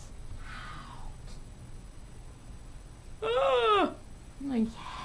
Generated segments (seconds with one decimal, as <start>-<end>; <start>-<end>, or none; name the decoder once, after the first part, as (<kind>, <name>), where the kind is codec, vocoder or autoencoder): none